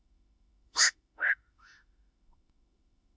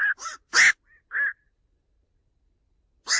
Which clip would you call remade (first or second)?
first